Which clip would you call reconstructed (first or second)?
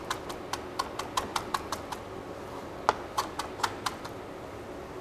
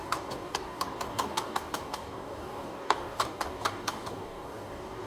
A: second